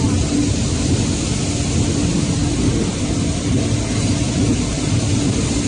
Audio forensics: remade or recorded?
recorded